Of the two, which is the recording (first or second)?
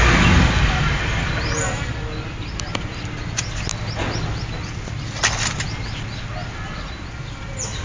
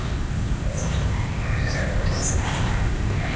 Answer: first